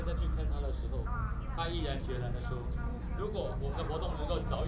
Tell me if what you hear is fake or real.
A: real